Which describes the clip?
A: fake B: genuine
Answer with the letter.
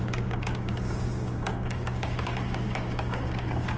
A